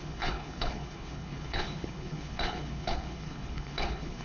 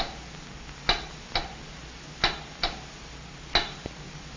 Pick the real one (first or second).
second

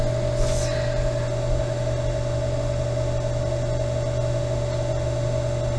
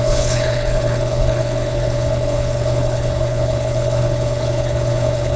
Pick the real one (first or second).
first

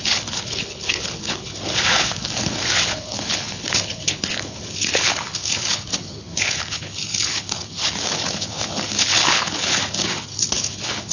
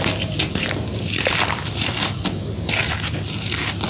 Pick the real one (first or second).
second